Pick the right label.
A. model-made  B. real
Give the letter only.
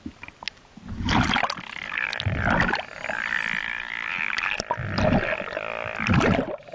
B